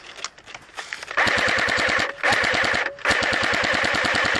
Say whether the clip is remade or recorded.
recorded